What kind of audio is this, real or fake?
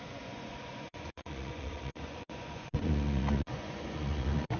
fake